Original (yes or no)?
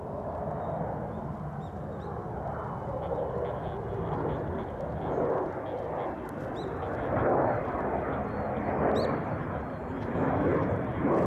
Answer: yes